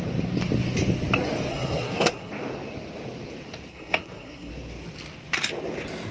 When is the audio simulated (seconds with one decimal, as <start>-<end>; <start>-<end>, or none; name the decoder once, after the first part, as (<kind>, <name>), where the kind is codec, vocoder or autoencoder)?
1.5-2.3 (codec, SNAC); 3.7-4.5